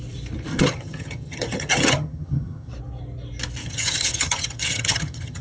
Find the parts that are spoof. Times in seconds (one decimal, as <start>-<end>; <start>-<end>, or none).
0.5-2.7; 3.6-5.4